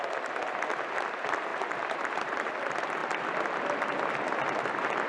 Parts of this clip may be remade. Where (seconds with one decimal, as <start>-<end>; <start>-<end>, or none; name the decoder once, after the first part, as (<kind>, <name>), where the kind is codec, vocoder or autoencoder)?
1.5-2.5 (vocoder, BigVGAN v2)